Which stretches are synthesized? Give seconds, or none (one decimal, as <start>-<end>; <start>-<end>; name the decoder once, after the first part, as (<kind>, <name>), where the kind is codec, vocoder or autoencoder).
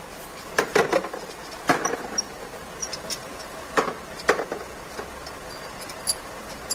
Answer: none